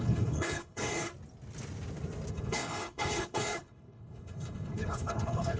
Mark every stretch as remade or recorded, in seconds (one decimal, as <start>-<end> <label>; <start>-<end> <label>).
0.0-1.1 remade; 1.1-2.3 recorded; 2.3-5.6 remade